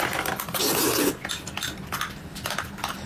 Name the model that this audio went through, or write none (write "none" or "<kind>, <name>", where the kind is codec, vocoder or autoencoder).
none